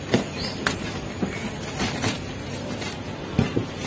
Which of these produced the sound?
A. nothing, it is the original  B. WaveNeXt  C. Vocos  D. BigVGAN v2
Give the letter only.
D